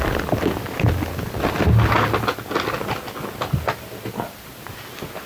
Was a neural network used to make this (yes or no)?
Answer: no